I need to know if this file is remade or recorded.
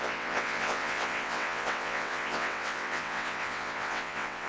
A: remade